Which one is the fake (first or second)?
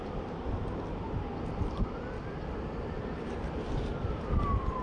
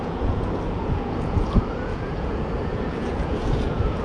second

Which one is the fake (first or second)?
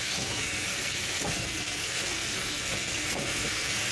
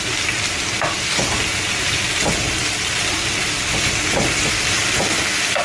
first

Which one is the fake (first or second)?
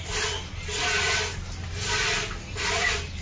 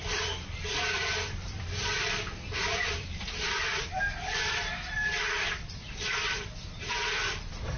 second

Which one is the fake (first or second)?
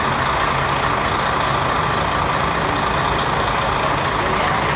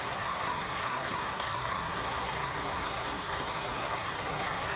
second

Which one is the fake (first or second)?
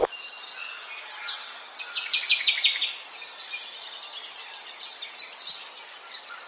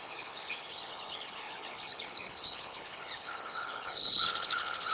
second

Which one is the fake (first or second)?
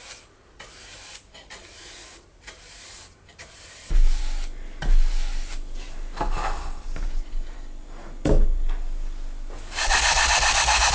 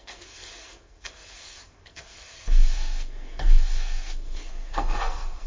second